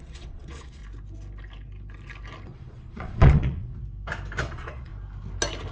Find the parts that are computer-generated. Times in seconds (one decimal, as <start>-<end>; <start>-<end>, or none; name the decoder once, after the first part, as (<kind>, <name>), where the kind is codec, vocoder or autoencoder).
0.0-0.8 (vocoder, Vocos); 2.5-3.7; 4.4-4.9